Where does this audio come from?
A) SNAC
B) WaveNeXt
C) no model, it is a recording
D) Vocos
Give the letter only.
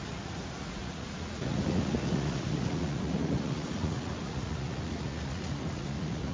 D